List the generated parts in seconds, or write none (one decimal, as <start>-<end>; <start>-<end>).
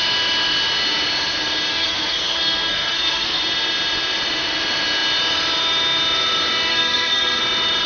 1.7-3.4; 6.7-7.4